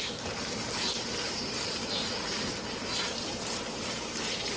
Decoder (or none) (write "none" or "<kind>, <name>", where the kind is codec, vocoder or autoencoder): vocoder, BigVGAN v2